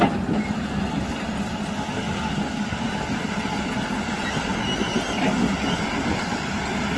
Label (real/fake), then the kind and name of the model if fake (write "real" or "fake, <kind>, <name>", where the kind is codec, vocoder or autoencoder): real